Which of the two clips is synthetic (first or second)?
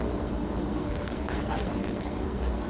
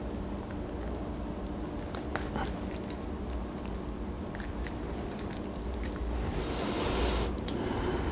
first